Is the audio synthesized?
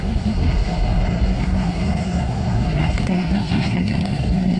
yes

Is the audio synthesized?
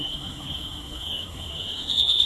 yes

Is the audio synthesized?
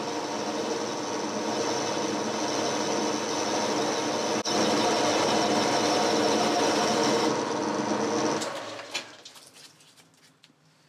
no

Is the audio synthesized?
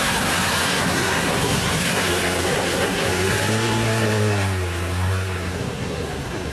yes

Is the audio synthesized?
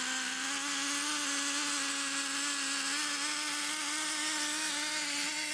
no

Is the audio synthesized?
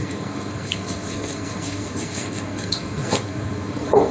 yes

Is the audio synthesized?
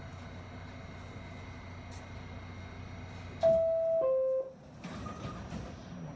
no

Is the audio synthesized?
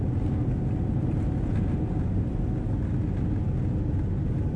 no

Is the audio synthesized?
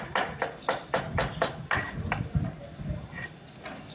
no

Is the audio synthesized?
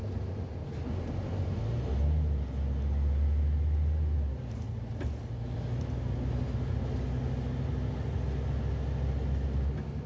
no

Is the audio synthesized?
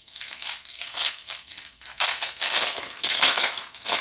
yes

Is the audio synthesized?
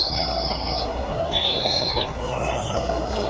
yes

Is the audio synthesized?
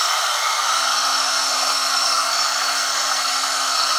yes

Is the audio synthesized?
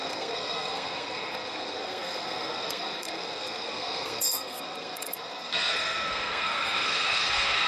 yes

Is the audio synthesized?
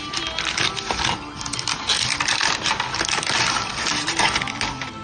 no